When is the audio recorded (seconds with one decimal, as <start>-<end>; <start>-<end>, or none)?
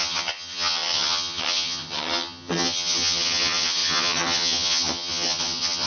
none